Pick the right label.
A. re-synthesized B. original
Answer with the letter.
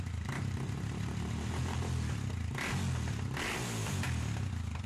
B